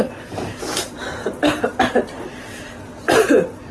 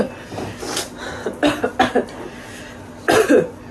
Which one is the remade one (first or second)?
first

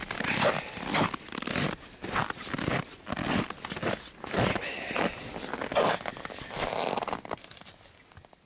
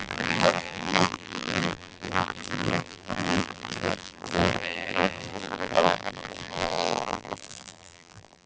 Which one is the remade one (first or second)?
second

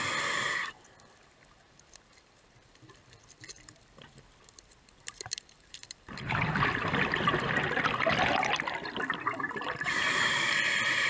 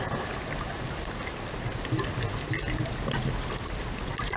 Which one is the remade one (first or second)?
first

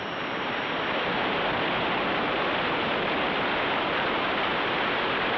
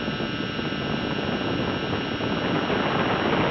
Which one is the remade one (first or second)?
first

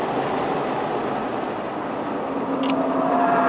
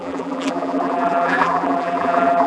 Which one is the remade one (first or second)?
second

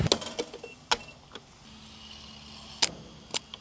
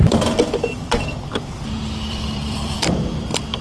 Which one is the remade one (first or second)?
second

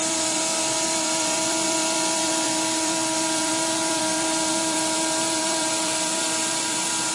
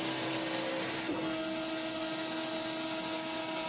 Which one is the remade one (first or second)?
first